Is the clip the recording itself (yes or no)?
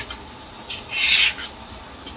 yes